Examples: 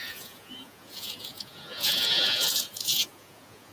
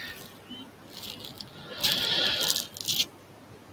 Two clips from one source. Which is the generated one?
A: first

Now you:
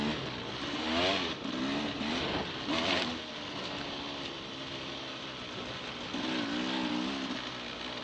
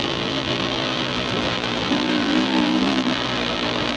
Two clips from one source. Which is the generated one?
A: second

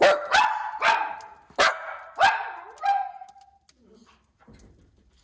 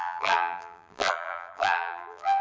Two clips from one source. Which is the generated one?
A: second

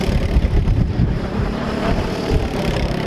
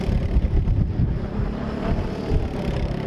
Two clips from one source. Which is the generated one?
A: first